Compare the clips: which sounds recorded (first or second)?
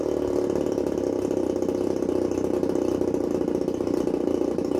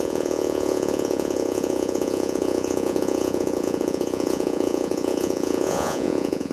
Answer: first